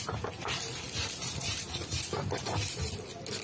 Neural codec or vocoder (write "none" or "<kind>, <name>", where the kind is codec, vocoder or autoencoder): none